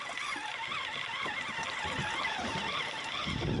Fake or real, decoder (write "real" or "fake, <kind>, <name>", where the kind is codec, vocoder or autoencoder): real